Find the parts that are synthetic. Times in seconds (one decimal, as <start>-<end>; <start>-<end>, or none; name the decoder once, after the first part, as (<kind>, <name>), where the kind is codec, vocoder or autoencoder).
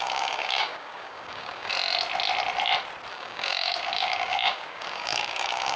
0.0-1.7 (codec, DAC); 3.1-5.8